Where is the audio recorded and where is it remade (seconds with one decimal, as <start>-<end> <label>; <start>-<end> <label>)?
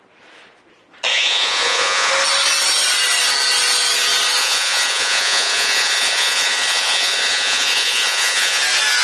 0.0-1.1 recorded; 1.1-2.1 remade; 2.1-4.4 recorded; 4.4-8.6 remade; 8.6-9.0 recorded